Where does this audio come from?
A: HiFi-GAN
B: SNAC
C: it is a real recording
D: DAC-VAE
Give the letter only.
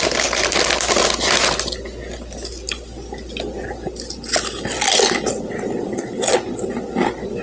C